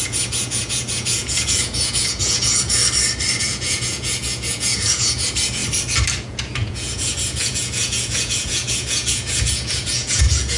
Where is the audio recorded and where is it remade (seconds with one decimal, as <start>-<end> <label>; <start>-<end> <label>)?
0.0-2.8 remade; 2.8-3.4 recorded; 3.4-5.6 remade; 5.6-6.3 recorded; 6.3-10.6 remade